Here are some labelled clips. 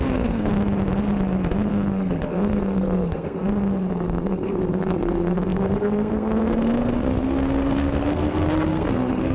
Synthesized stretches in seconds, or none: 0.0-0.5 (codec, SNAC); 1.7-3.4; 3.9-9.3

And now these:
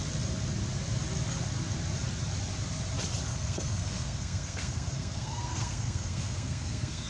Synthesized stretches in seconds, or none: 3.3-7.1 (codec, SNAC)

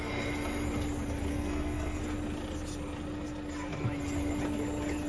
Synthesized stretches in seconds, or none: 1.3-2.0 (codec, SNAC)

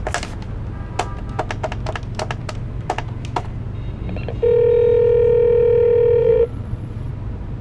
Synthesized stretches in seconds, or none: 6.2-7.1 (vocoder, Vocos)

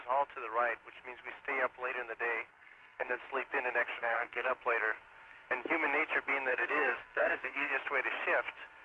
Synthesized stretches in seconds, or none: 2.5-3.2 (codec, SNAC); 4.0-4.5; 6.5-7.7

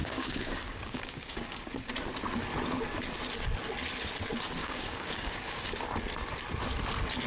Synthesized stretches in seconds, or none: 0.0-1.9 (codec, DAC); 4.6-5.7

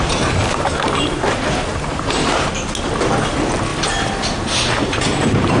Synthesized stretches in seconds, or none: 0.4-1.2 (vocoder, BigVGAN v2); 1.7-2.5; 3.7-5.6